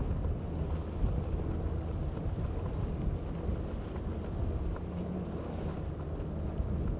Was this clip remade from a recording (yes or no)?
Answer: no